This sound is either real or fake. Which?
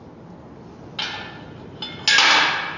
real